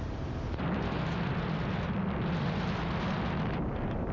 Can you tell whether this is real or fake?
real